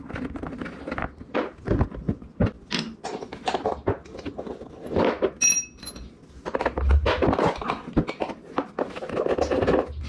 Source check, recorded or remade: recorded